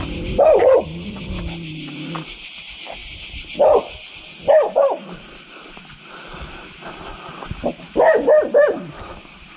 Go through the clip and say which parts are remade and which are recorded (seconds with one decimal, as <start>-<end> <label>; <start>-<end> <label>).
0.0-0.6 recorded; 0.6-1.3 remade; 1.3-9.6 recorded